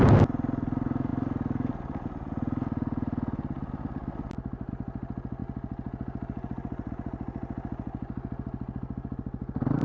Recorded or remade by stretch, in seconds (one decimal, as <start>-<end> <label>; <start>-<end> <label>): 0.0-9.8 recorded